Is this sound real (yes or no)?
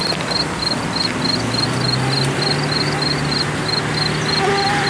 yes